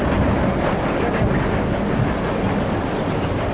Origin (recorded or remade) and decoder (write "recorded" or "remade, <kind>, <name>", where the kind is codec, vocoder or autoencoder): recorded